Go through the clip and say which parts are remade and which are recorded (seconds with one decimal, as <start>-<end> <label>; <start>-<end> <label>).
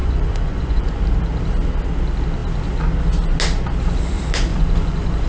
0.0-1.0 remade; 1.0-4.5 recorded; 4.5-5.3 remade